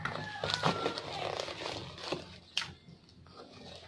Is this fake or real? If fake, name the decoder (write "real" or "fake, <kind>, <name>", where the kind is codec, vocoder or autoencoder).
real